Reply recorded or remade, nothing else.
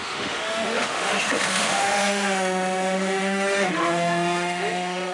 remade